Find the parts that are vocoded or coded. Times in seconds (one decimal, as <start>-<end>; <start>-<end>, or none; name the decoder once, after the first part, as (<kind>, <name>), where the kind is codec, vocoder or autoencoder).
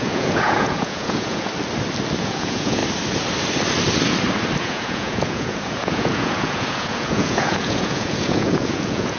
0.0-1.5 (vocoder, Vocos); 2.2-2.8; 4.6-9.2